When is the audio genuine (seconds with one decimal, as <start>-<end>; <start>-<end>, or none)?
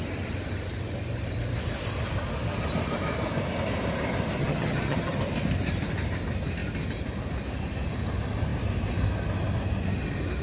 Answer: 0.0-4.4; 5.2-10.4